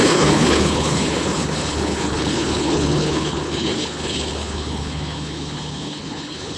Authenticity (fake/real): fake